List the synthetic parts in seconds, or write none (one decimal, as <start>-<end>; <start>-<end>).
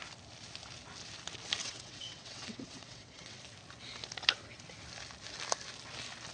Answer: 1.6-3.4